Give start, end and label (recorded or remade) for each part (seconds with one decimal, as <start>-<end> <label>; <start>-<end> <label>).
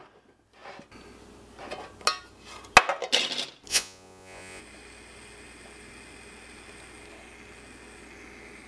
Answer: 0.0-3.7 recorded; 3.7-4.6 remade; 4.6-8.7 recorded